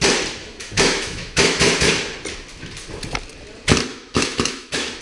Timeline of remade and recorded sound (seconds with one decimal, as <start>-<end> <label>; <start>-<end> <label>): 0.0-0.4 recorded; 0.4-1.9 remade; 1.9-3.9 recorded; 3.9-5.0 remade